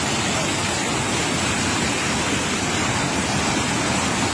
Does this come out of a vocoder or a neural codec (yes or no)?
no